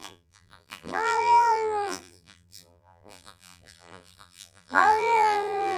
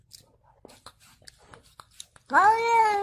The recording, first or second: second